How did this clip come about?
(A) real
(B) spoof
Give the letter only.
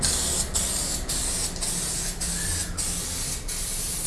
A